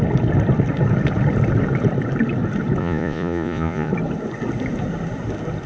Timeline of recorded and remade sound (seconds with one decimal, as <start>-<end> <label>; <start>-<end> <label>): 0.0-2.8 recorded; 2.8-3.9 remade; 3.9-5.7 recorded

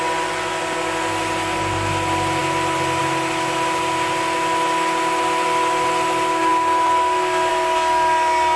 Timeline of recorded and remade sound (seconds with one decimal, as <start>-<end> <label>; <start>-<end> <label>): 0.0-8.6 recorded

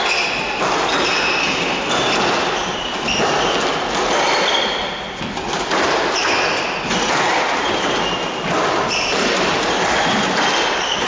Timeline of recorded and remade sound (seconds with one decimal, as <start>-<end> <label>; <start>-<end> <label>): 0.0-11.1 recorded